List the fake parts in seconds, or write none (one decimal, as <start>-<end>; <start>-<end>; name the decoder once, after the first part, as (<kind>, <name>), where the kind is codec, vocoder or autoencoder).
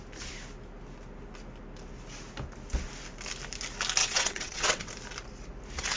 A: 4.0-4.9 (vocoder, WaveNeXt)